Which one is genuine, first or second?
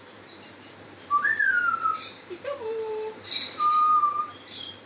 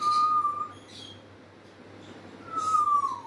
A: second